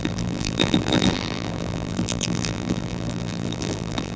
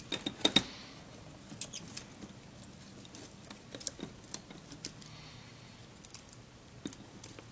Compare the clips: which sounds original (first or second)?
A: second